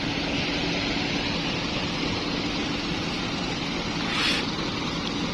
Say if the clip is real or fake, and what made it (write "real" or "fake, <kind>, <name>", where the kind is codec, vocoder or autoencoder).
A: real